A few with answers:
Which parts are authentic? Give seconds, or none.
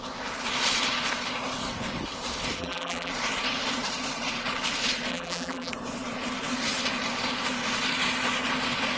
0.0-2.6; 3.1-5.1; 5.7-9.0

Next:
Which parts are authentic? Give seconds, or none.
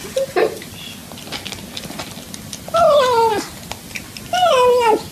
0.0-5.1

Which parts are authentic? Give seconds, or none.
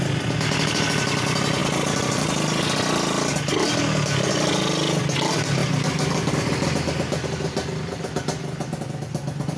0.0-9.6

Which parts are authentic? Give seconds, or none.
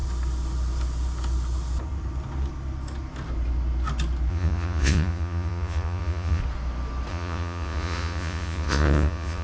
0.0-4.3; 6.4-7.1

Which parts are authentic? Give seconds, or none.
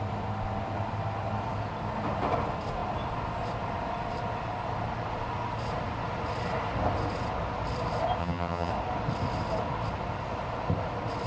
0.0-8.2; 8.7-11.3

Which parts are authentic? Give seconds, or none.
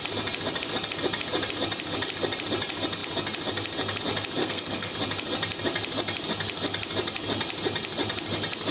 0.0-4.4; 4.9-8.7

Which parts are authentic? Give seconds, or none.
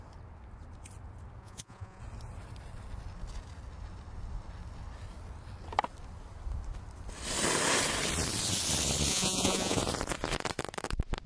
0.0-1.4; 2.0-9.1; 9.8-11.3